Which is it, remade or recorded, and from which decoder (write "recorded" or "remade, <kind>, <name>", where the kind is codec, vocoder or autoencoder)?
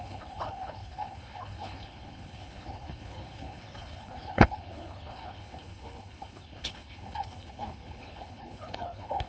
remade, codec, HILCodec